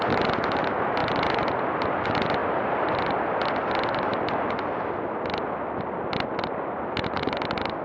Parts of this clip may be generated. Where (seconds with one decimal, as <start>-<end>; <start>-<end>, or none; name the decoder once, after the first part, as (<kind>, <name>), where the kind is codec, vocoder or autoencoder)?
none